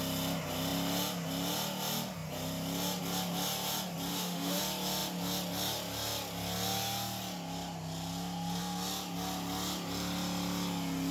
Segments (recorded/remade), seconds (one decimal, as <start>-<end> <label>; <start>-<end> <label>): 0.0-4.1 recorded; 4.1-4.6 remade; 4.6-11.1 recorded